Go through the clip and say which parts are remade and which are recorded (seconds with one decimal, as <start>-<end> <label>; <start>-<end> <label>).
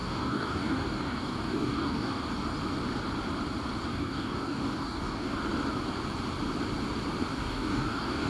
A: 0.0-2.3 remade; 2.3-3.9 recorded; 3.9-5.4 remade; 5.4-7.3 recorded; 7.3-8.3 remade